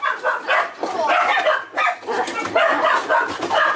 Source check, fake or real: real